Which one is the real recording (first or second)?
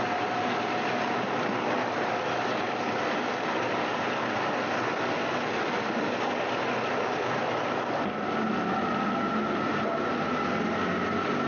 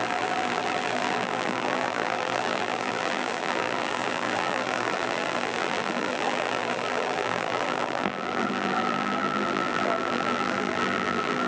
first